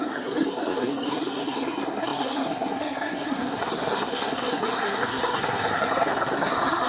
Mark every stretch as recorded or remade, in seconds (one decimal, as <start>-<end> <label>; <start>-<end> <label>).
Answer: 0.0-6.9 remade

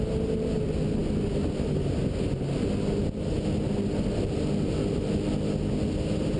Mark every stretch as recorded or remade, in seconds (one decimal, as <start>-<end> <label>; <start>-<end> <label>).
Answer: 0.0-6.4 recorded

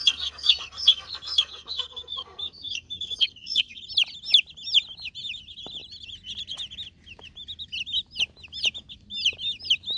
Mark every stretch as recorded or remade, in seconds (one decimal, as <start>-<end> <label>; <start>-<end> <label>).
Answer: 0.0-3.8 remade; 3.8-10.0 recorded

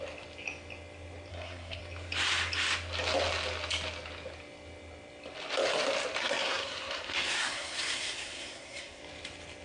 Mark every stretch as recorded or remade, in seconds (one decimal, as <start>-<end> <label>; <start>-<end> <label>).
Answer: 0.0-1.3 recorded; 1.3-1.8 remade; 1.8-6.2 recorded; 6.2-9.0 remade; 9.0-9.6 recorded

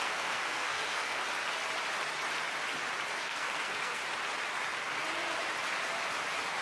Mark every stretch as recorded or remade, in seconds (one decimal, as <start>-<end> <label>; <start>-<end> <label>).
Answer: 0.0-1.2 remade; 1.2-3.1 recorded; 3.1-4.0 remade; 4.0-6.6 recorded

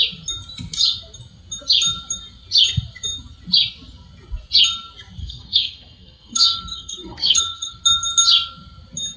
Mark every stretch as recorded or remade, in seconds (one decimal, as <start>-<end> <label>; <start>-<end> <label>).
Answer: 0.0-5.2 recorded; 5.2-7.8 remade; 7.8-9.2 recorded

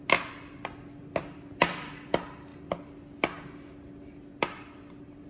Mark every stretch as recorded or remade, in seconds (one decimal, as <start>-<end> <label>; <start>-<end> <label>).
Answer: 0.0-5.3 recorded

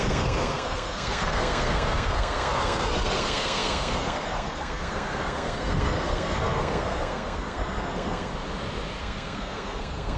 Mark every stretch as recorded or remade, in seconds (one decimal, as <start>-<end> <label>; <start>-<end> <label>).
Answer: 0.0-8.3 remade; 8.3-9.0 recorded; 9.0-10.2 remade